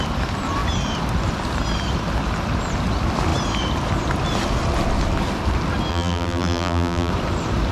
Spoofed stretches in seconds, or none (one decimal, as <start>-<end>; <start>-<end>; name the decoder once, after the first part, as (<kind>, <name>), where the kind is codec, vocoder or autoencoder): 5.9-7.1 (vocoder, BigVGAN v2)